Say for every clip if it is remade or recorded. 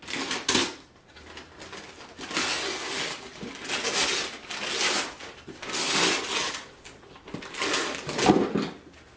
recorded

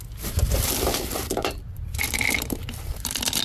remade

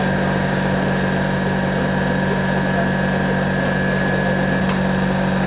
recorded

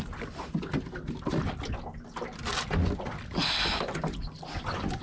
recorded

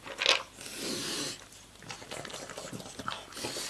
recorded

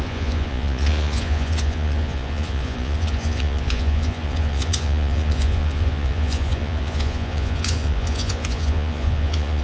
remade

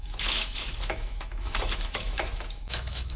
remade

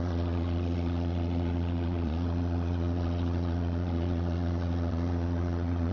remade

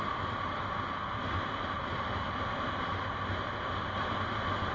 recorded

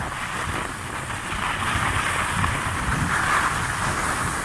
recorded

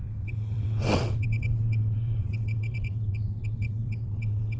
remade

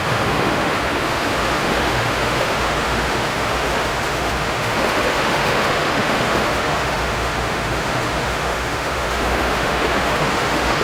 remade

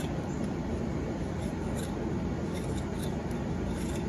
recorded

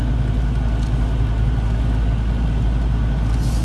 recorded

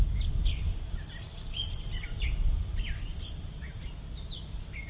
recorded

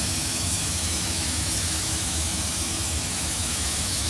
remade